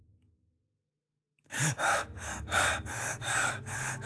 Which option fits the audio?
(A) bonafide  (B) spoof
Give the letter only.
B